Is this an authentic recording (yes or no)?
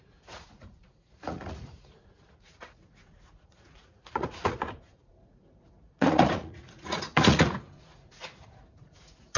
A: no